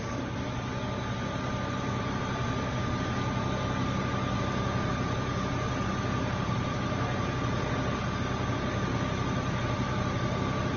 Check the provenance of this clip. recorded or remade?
recorded